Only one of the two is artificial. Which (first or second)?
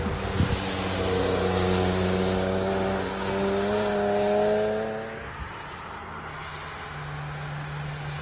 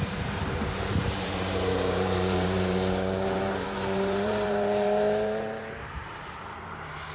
second